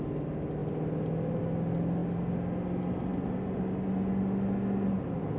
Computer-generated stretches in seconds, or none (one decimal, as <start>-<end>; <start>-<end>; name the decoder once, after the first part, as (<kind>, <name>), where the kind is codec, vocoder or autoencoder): none